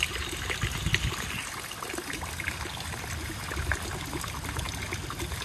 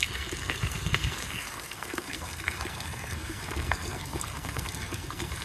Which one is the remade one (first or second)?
second